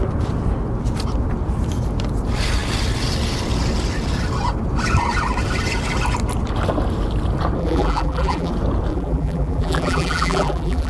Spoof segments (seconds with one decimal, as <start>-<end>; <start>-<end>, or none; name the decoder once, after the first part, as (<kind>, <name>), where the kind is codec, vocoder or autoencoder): 7.6-8.5 (vocoder, BigVGAN v2); 8.9-10.9